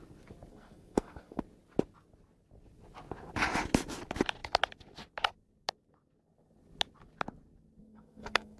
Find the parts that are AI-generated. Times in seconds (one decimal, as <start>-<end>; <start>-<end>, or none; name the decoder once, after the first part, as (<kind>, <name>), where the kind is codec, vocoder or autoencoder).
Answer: 0.5-1.4 (codec, SNAC); 7.8-8.6

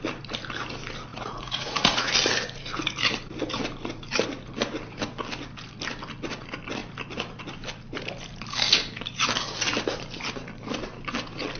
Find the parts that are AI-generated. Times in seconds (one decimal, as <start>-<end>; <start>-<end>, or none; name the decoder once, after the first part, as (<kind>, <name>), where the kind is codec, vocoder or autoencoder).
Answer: 1.1-2.1 (vocoder, Vocos)